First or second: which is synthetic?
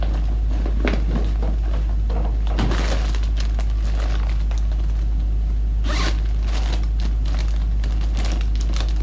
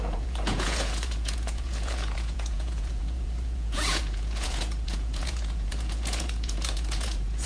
second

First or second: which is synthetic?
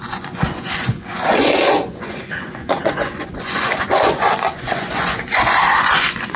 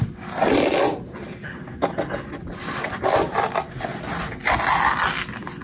first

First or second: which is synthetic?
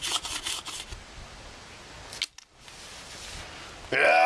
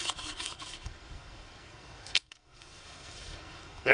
second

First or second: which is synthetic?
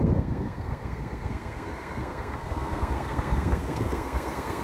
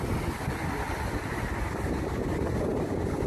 first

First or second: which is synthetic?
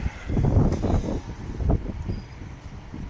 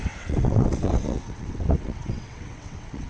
second